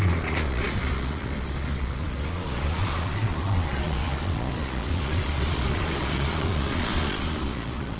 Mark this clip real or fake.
fake